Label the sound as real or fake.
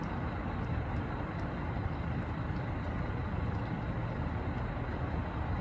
real